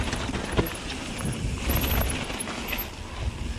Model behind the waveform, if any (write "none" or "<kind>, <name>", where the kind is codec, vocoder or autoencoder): none